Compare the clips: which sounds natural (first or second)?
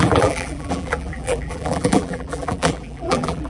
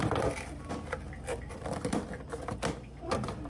second